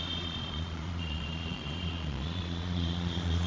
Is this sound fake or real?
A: fake